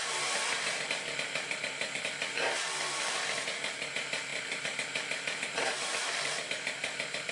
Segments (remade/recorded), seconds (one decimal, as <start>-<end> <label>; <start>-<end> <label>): 0.0-7.3 remade